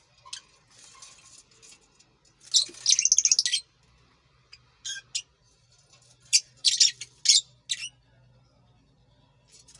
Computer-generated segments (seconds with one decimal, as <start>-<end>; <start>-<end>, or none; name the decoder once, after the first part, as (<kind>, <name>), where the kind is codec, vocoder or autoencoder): 5.3-6.7 (vocoder, BigVGAN v2)